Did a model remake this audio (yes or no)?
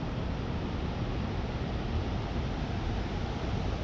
no